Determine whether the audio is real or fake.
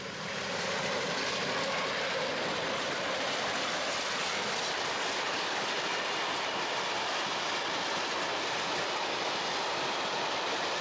fake